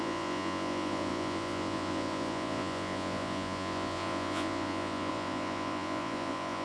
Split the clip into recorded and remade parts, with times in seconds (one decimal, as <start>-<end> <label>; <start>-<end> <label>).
0.0-6.6 remade

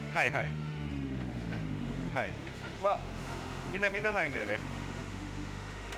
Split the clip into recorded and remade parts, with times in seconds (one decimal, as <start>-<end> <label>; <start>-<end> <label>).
0.0-6.0 remade

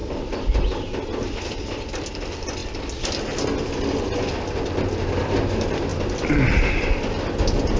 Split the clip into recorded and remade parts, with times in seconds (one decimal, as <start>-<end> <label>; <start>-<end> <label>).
0.0-7.8 recorded

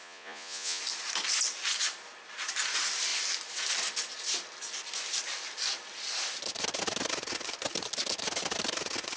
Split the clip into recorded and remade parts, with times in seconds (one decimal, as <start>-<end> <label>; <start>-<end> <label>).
0.0-0.8 remade; 0.8-9.2 recorded

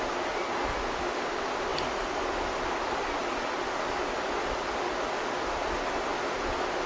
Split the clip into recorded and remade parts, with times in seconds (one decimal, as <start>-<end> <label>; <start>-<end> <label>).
0.0-6.9 recorded

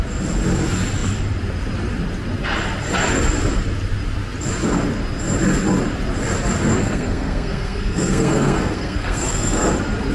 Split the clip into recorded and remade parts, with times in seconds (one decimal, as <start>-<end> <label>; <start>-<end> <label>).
0.0-6.8 recorded; 6.8-9.7 remade; 9.7-10.1 recorded

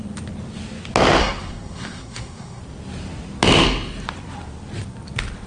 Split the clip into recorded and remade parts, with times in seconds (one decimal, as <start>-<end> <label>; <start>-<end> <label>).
0.0-1.2 recorded; 1.2-2.6 remade; 2.6-5.5 recorded

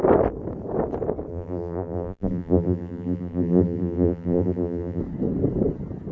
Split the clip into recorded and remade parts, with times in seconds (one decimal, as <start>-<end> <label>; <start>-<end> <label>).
0.0-1.3 recorded; 1.3-5.0 remade; 5.0-6.1 recorded